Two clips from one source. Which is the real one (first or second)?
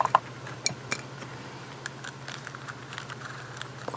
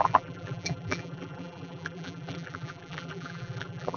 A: first